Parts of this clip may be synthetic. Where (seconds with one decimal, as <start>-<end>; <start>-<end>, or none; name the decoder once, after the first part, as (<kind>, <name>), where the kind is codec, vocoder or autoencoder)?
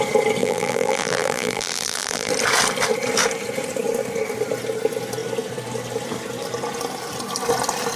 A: 0.4-2.3 (vocoder, BigVGAN v2)